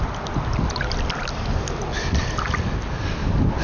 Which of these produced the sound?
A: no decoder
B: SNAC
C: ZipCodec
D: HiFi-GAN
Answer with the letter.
A